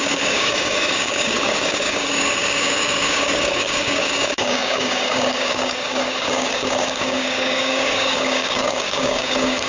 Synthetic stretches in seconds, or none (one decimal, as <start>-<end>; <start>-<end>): 0.0-9.7